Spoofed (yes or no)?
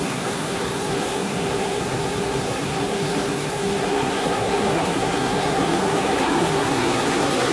yes